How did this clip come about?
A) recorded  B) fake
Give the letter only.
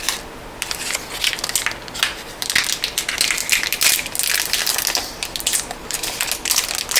A